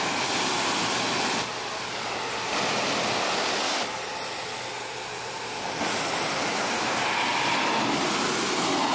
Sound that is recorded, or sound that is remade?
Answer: recorded